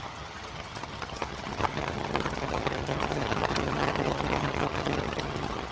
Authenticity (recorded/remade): remade